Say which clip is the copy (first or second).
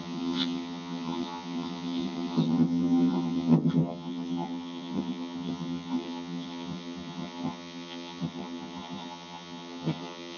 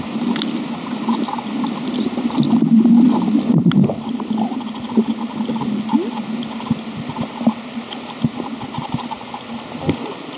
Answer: first